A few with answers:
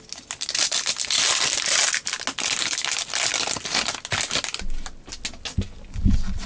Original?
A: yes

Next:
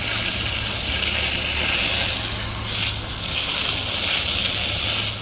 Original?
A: yes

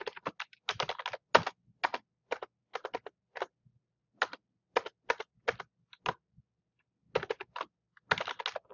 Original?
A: yes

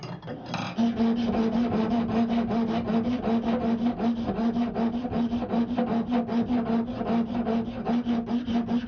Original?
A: yes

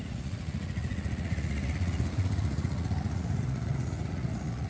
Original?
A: no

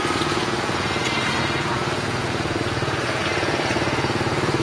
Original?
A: no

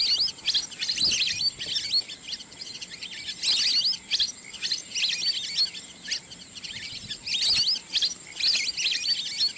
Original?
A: yes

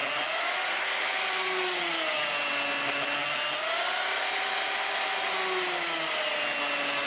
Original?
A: yes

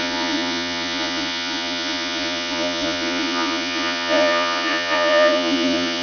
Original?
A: no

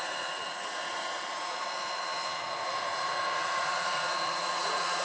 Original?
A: no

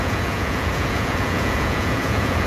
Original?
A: no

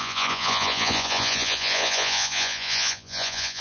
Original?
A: no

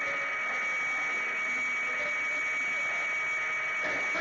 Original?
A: yes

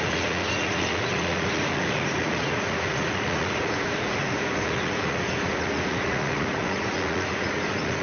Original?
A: no